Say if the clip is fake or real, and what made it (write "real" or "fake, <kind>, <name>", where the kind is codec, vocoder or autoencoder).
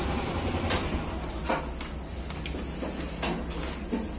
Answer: real